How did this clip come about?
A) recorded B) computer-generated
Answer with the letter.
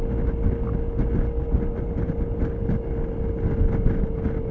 A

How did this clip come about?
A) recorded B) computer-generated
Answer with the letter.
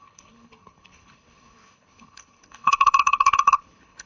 B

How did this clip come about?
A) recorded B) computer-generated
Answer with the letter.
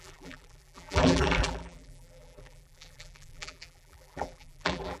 B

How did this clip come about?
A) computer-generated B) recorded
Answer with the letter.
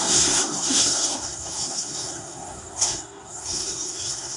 A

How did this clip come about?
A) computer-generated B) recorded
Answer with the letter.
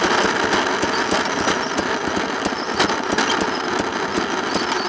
B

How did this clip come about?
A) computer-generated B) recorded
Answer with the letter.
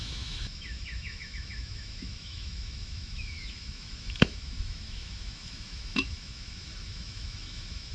A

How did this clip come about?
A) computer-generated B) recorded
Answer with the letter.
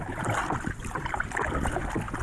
B